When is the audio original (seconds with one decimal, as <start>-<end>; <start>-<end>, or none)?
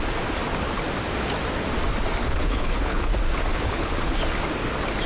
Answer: 0.0-2.2; 3.1-3.5; 4.2-5.1